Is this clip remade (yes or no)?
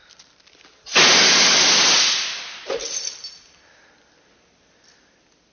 no